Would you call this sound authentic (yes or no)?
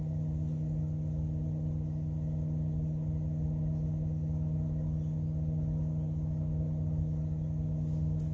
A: yes